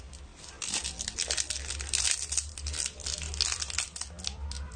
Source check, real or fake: real